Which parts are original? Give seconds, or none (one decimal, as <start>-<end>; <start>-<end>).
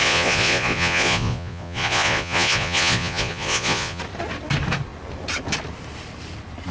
4.0-6.7